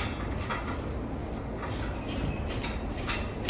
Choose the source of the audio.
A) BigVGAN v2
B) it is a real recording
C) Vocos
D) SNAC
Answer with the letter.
B